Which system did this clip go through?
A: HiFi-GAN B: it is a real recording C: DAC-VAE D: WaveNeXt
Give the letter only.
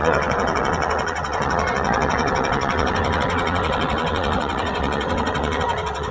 D